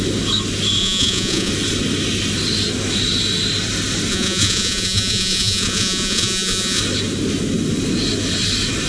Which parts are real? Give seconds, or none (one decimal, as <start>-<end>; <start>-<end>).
0.0-0.8; 1.5-4.1; 6.8-8.9